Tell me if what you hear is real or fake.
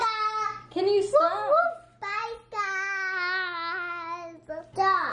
real